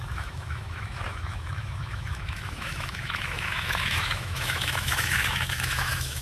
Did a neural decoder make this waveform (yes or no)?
yes